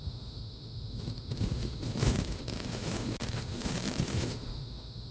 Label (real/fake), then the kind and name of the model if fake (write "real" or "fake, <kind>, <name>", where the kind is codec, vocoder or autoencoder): fake, autoencoder, DAC-VAE